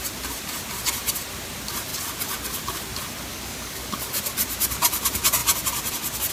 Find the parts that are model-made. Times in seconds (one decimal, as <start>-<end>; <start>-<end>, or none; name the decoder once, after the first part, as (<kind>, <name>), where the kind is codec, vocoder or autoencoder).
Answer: 3.3-4.2 (codec, DAC)